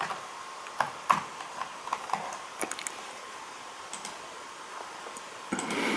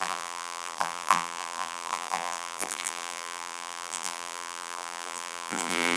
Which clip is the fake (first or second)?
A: second